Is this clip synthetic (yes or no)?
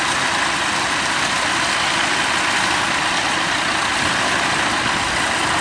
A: no